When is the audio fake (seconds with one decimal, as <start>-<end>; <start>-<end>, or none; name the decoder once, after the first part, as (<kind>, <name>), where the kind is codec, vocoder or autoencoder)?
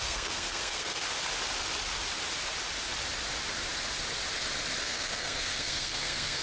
0.0-1.0 (codec, SNAC); 4.8-6.4